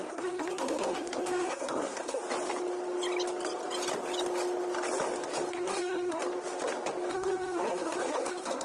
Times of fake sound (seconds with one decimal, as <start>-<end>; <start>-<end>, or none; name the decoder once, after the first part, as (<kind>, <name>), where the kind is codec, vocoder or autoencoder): 0.0-2.2 (codec, SNAC); 5.5-6.2; 7.1-8.6